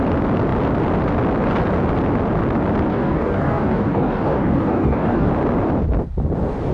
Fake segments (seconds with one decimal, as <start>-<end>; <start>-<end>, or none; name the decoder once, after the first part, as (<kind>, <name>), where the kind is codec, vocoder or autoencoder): 2.9-5.3 (codec, DAC)